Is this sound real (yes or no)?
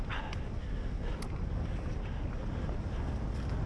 yes